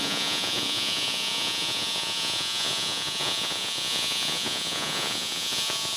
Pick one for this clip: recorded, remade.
remade